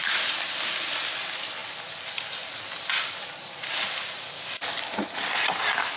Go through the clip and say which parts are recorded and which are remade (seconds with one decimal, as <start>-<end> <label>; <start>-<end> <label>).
0.0-6.0 recorded